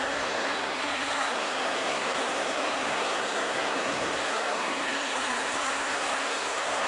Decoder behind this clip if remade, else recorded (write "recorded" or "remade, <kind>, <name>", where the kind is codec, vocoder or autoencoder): remade, codec, SNAC